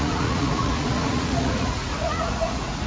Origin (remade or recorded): remade